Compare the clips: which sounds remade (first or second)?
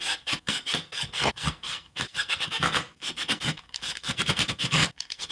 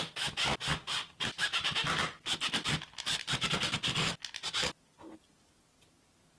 first